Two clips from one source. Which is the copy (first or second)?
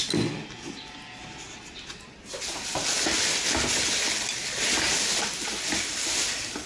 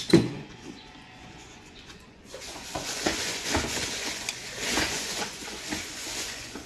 second